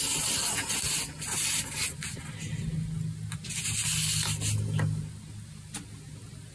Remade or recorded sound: recorded